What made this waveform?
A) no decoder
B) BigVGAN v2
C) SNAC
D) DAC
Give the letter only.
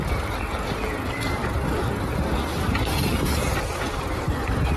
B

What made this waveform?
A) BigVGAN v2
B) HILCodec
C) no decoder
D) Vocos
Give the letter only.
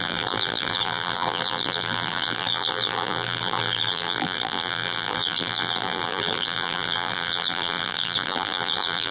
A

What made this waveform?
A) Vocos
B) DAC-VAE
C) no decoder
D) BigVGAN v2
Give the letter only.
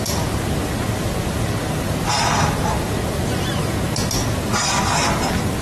C